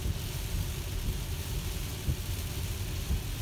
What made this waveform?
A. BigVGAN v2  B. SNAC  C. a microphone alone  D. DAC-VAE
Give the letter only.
C